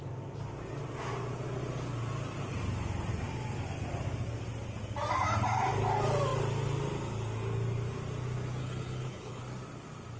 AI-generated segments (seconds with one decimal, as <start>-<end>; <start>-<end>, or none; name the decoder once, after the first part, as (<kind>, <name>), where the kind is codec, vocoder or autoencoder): 8.6-9.4 (codec, HILCodec)